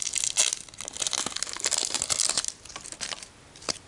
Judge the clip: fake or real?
real